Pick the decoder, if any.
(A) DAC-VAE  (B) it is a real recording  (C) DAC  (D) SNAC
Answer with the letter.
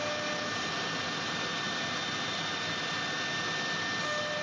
B